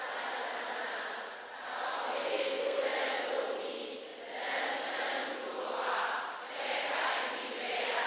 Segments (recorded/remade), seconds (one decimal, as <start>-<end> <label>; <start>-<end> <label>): 0.0-2.2 recorded; 2.2-2.8 remade; 2.8-8.1 recorded